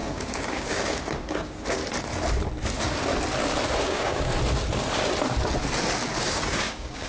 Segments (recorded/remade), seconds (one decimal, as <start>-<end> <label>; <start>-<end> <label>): 0.0-1.8 remade; 1.8-3.8 recorded; 3.8-4.3 remade; 4.3-6.2 recorded; 6.2-7.1 remade